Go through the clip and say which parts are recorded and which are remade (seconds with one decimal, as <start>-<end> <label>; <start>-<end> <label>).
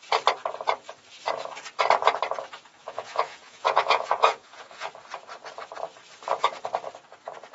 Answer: 0.0-2.8 recorded; 2.8-4.9 remade; 4.9-7.5 recorded